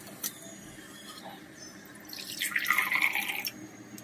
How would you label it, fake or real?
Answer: real